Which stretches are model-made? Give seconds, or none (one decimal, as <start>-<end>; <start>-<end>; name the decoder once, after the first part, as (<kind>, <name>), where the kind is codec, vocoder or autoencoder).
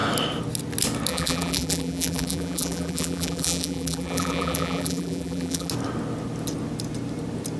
1.1-5.7 (vocoder, BigVGAN v2)